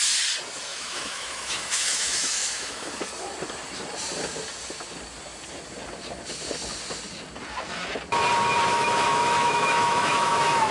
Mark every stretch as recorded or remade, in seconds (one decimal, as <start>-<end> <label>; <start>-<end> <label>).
0.0-0.7 recorded; 0.7-3.1 remade; 3.1-8.7 recorded; 8.7-10.7 remade